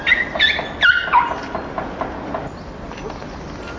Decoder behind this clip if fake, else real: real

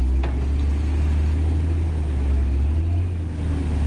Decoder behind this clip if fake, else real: real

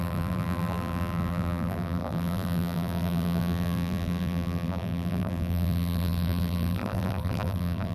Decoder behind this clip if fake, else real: fake, vocoder, BigVGAN v2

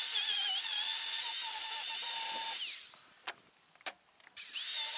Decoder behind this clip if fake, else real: real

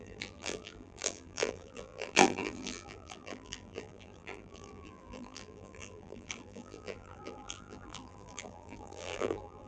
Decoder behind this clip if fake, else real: fake, vocoder, BigVGAN v2